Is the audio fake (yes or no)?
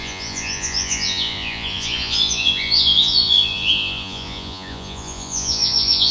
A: yes